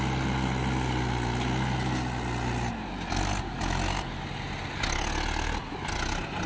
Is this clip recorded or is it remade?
recorded